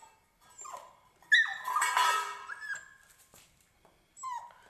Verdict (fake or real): real